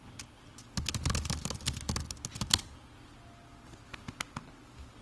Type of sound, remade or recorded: recorded